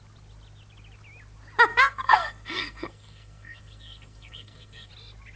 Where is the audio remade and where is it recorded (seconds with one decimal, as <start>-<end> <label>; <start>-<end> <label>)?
0.0-1.7 recorded; 1.7-4.9 remade; 4.9-5.4 recorded